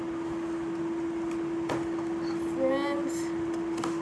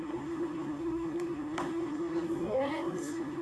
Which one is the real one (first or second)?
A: first